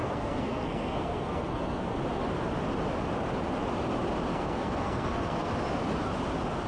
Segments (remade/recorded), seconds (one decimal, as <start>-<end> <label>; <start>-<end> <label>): 0.0-1.9 remade; 1.9-4.3 recorded; 4.3-5.5 remade; 5.5-6.7 recorded